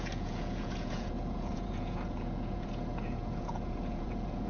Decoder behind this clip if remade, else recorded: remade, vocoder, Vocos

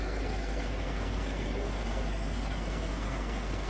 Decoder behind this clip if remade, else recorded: remade, codec, SNAC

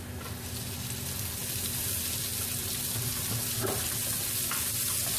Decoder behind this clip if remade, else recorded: recorded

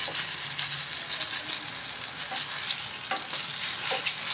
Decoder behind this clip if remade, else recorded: recorded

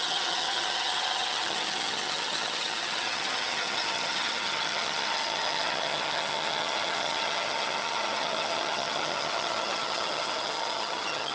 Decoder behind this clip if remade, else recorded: remade, vocoder, HiFi-GAN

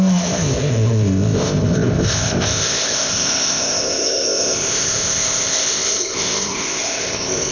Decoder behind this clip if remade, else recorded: remade, codec, ZipCodec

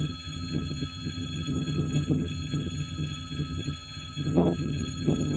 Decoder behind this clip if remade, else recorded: remade, vocoder, HiFi-GAN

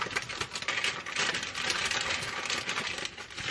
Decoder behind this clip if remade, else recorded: recorded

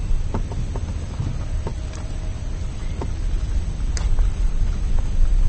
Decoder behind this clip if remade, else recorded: recorded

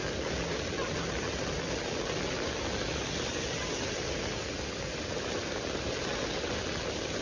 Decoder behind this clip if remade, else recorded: recorded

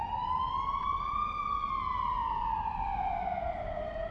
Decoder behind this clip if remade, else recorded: recorded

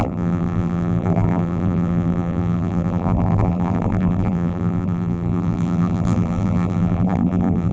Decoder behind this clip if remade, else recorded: remade, vocoder, BigVGAN v2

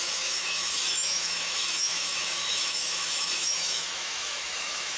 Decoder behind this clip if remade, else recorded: remade, autoencoder, DAC-VAE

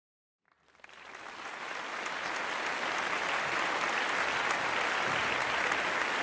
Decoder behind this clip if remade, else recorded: recorded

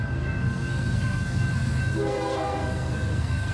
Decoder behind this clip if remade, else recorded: remade, codec, SNAC